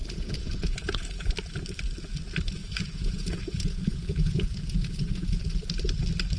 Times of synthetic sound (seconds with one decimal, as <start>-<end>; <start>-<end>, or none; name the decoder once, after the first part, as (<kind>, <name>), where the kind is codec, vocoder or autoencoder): 0.0-1.3 (vocoder, Vocos); 2.6-5.4